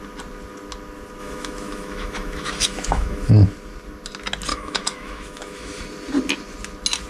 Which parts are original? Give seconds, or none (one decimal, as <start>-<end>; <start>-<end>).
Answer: 0.0-1.2; 3.3-4.5; 5.8-7.1